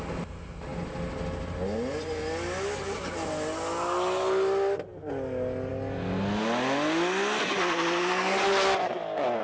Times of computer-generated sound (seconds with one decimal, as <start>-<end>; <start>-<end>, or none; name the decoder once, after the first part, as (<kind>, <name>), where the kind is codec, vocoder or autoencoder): none